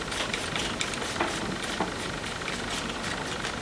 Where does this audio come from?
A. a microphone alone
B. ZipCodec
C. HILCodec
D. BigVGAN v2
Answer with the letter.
A